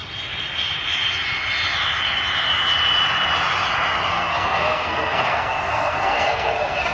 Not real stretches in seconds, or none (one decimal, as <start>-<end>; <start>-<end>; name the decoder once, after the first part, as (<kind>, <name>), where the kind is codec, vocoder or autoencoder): 4.1-6.9 (codec, SNAC)

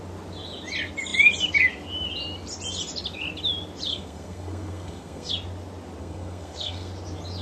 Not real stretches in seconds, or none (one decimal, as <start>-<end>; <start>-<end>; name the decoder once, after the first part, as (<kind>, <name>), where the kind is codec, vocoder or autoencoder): 3.9-5.3 (codec, SNAC); 6.0-6.9

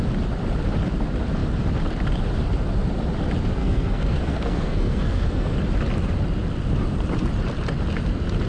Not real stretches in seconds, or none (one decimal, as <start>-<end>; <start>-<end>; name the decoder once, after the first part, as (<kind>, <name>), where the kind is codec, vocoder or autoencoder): 3.6-5.6 (codec, SNAC)

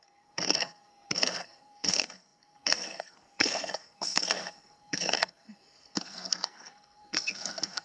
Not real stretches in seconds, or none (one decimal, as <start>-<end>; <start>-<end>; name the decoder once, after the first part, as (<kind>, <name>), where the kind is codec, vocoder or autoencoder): 0.0-7.8 (codec, SNAC)

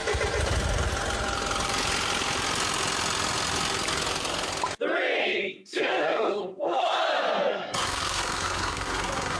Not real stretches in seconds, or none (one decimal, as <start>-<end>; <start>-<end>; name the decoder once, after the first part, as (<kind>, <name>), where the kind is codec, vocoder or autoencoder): 5.2-7.0 (codec, SNAC); 7.5-9.4

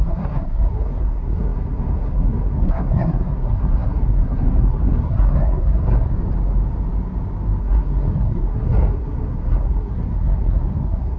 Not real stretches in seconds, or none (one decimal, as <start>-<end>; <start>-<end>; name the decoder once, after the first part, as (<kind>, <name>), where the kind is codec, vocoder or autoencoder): 0.0-6.1 (codec, SNAC); 7.6-11.2

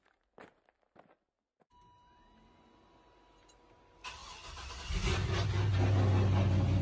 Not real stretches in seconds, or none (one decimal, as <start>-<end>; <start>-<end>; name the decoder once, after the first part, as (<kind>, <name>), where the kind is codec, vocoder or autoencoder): none

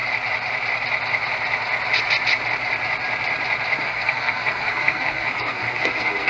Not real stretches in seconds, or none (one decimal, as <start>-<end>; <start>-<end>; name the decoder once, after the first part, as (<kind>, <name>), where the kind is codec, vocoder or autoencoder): 3.8-6.3 (codec, SNAC)